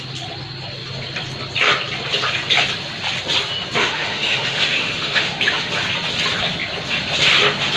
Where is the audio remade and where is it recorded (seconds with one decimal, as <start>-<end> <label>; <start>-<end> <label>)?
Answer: 0.0-3.8 recorded; 3.8-5.7 remade; 5.7-7.8 recorded